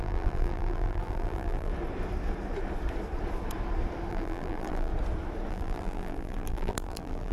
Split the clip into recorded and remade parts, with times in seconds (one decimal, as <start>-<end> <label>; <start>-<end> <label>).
0.0-1.7 remade; 1.7-4.1 recorded; 4.1-4.9 remade; 4.9-5.5 recorded; 5.5-7.3 remade